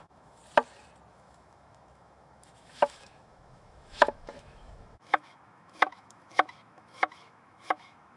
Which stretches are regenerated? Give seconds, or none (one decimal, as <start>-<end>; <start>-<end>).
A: 0.0-0.4; 1.1-8.2